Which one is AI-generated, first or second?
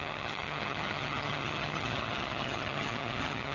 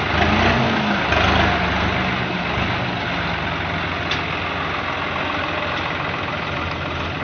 first